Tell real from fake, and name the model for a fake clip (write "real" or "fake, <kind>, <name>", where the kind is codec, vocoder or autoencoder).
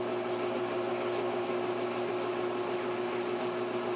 real